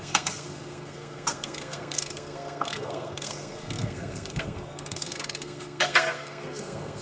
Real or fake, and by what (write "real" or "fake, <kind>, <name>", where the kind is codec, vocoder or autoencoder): fake, codec, SNAC